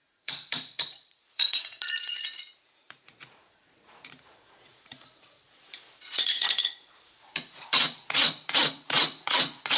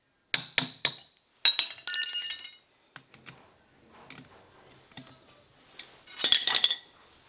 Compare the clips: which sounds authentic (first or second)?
second